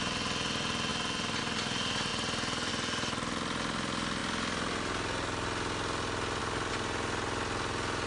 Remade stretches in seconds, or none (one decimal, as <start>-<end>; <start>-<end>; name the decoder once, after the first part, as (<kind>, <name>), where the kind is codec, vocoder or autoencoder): 2.1-2.7 (vocoder, BigVGAN v2)